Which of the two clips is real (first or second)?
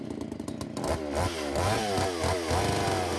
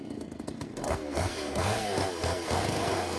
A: first